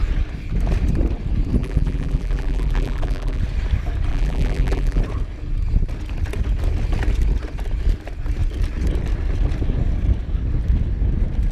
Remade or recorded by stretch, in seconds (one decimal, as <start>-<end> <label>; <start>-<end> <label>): 0.0-1.6 recorded; 1.6-3.4 remade; 3.4-4.1 recorded; 4.1-5.0 remade; 5.0-11.5 recorded